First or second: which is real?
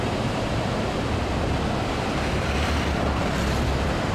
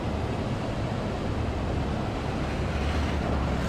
second